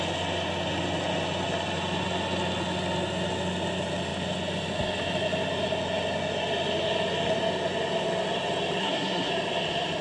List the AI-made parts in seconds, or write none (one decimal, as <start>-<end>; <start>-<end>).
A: 8.8-9.3